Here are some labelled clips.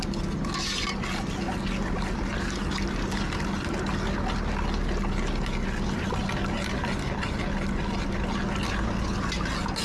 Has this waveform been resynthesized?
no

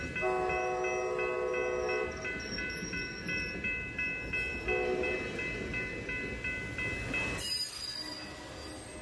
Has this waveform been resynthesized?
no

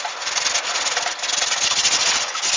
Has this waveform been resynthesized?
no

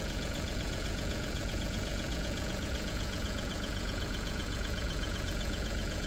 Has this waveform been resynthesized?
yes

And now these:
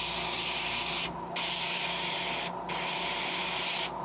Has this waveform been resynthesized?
no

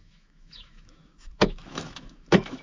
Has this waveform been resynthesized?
yes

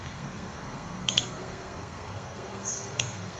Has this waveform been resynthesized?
yes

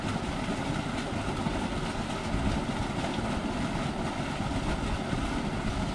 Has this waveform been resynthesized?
no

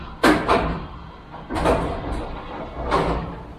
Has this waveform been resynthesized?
yes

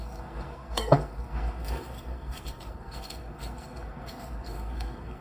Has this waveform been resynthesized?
yes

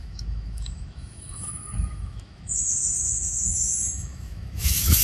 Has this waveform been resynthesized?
yes